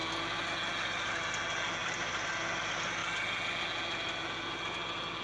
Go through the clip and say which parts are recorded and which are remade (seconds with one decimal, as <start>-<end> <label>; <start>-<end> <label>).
0.0-1.8 recorded; 1.8-2.3 remade; 2.3-5.2 recorded